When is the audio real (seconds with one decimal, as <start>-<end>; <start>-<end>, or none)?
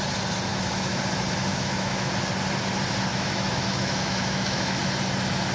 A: 0.0-0.5; 1.0-1.5; 2.1-3.1; 4.8-5.5